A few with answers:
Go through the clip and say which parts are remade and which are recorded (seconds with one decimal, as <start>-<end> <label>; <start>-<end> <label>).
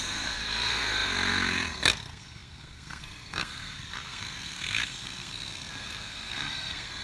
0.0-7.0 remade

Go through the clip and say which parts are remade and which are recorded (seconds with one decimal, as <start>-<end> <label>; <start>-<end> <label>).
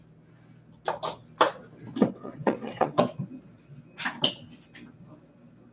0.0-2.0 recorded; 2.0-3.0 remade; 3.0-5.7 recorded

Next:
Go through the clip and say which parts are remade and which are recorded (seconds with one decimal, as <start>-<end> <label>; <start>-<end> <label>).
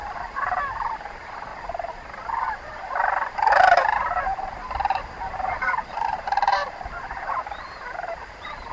0.0-1.5 remade; 1.5-4.2 recorded; 4.2-8.7 remade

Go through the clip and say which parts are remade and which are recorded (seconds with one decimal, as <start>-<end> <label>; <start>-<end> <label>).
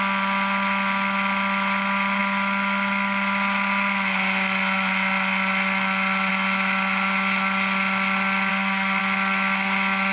0.0-8.5 recorded; 8.5-9.0 remade; 9.0-10.1 recorded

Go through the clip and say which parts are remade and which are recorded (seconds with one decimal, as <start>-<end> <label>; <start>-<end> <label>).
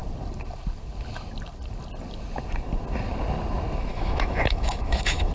0.0-3.9 recorded; 3.9-5.3 remade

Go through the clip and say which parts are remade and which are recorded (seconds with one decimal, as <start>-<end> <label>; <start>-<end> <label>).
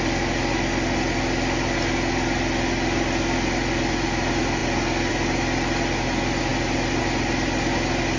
0.0-8.2 recorded